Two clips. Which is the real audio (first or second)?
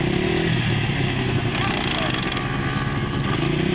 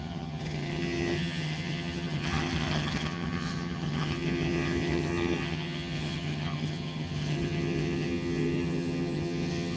first